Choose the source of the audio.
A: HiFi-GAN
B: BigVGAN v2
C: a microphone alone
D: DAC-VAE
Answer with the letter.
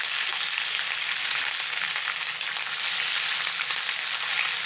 C